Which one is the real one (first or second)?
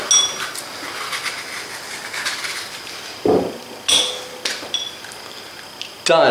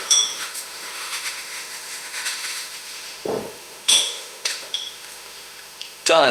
first